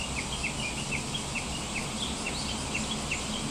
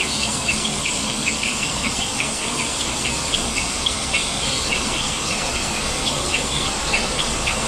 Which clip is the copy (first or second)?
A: second